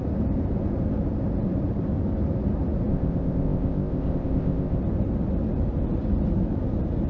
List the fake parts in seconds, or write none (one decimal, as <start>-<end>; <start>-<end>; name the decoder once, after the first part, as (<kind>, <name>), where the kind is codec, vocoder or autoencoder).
2.9-4.8 (codec, ZipCodec)